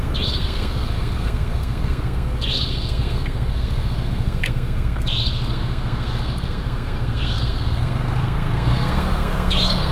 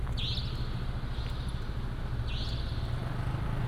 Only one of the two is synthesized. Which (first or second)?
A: first